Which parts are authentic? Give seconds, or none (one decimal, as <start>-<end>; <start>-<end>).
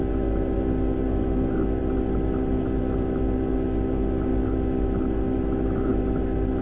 0.0-6.6